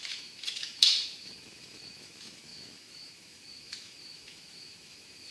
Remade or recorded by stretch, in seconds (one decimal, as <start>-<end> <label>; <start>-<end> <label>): 0.0-5.3 remade

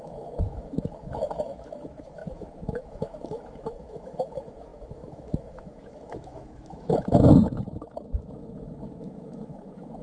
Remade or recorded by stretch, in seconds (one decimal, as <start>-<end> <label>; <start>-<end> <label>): 0.0-10.0 remade

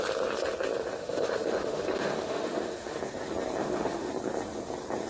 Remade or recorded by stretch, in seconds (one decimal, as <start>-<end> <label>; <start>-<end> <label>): 0.0-1.0 recorded; 1.0-3.0 remade; 3.0-3.6 recorded; 3.6-4.1 remade; 4.1-5.1 recorded

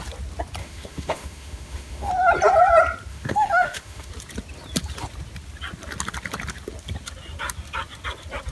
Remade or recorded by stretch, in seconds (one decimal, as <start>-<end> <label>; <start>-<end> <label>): 0.0-0.6 recorded; 0.6-2.1 remade; 2.1-3.1 recorded; 3.1-4.1 remade; 4.1-8.5 recorded